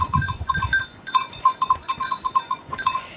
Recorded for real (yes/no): no